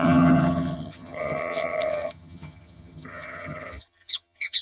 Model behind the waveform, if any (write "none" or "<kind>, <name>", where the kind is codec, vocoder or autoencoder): vocoder, HiFi-GAN